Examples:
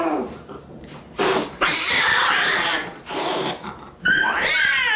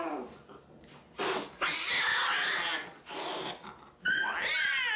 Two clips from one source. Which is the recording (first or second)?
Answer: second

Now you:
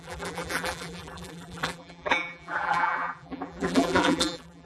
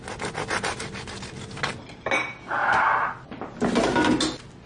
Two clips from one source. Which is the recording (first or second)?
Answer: second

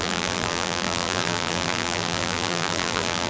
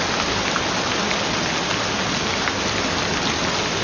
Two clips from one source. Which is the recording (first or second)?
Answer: second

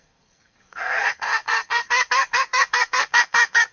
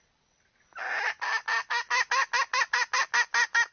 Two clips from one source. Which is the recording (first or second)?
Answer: second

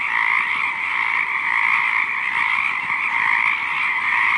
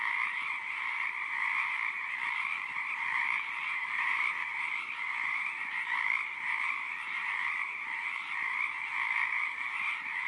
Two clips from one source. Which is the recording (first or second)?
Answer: first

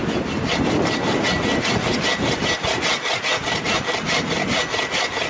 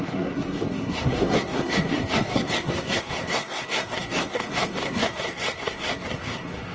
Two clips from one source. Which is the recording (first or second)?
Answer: first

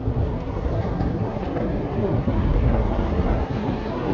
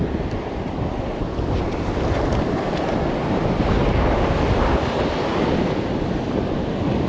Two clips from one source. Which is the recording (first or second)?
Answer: second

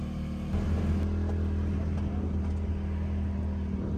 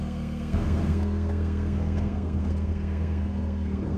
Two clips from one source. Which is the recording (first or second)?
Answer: first